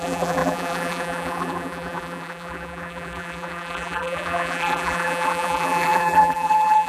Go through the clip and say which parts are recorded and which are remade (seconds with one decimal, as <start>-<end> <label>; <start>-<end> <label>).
0.0-6.9 remade